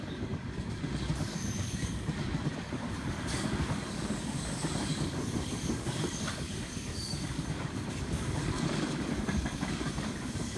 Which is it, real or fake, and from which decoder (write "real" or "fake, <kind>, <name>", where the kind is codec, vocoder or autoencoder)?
fake, codec, DAC